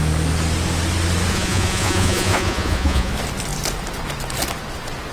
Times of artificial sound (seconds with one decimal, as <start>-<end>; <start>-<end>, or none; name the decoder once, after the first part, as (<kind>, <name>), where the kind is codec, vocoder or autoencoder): 1.3-3.1 (vocoder, Vocos)